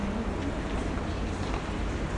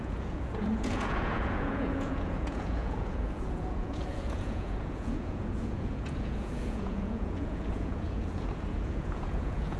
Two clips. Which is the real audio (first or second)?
first